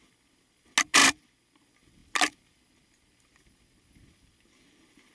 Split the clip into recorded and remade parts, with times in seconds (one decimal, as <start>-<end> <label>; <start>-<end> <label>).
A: 0.0-5.1 recorded